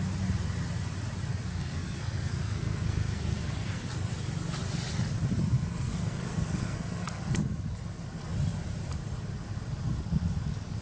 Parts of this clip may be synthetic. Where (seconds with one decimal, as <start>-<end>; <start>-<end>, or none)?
1.3-4.1; 5.4-7.4